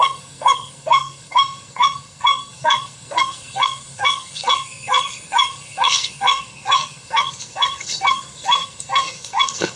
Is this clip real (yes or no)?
no